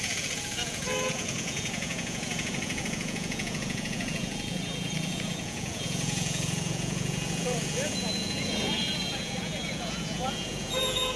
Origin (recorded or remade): remade